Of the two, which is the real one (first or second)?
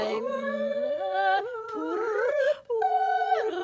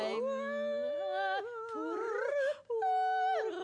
second